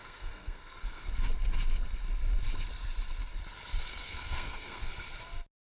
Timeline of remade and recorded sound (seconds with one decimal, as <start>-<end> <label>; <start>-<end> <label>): 0.0-1.1 remade; 1.1-3.9 recorded; 3.9-4.9 remade; 4.9-5.7 recorded